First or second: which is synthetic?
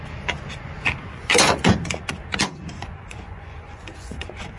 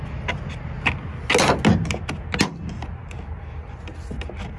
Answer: first